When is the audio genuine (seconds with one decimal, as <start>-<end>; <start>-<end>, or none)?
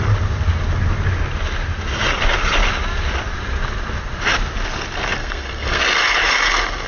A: 0.0-5.2; 5.8-6.9